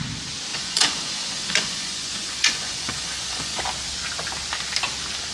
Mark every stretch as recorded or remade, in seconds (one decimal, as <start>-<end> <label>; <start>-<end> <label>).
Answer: 0.0-0.5 recorded; 0.5-3.6 remade; 3.6-5.3 recorded